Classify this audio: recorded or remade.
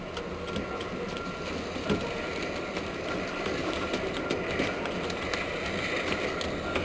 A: recorded